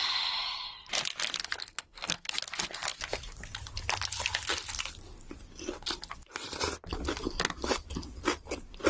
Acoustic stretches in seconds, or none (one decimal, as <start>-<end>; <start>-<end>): 0.0-1.6; 2.3-8.9